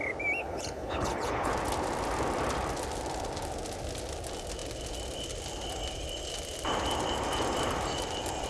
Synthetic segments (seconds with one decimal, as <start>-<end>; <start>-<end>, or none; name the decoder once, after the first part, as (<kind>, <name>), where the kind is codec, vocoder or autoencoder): 0.4-1.5 (codec, HILCodec)